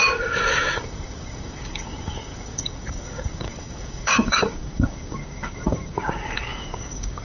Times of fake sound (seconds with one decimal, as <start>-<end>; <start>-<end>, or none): 0.0-7.2